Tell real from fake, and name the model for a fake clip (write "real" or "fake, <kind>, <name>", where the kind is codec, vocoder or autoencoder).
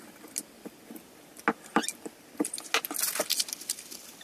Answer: real